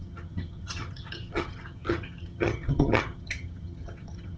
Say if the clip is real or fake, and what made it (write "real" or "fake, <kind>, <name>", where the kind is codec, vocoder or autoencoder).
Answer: fake, vocoder, HiFi-GAN